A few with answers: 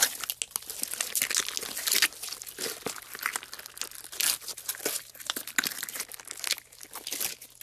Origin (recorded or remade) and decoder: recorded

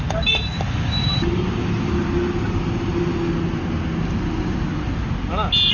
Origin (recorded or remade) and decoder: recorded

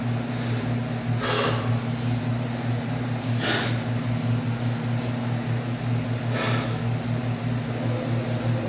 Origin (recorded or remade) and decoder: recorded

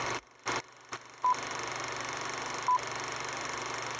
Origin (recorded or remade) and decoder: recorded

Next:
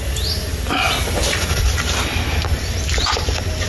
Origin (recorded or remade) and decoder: recorded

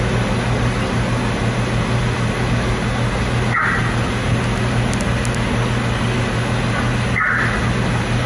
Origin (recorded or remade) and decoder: recorded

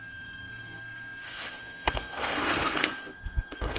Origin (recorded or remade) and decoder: remade, codec, SNAC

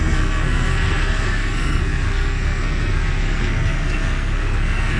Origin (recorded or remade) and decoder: remade, codec, SNAC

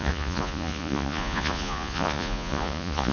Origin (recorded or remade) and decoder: remade, vocoder, Vocos